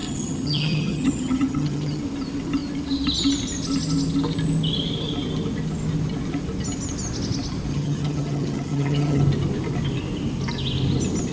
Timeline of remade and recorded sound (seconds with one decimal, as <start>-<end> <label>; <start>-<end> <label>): 0.0-2.0 remade; 2.0-7.7 recorded; 7.7-9.2 remade; 9.2-11.3 recorded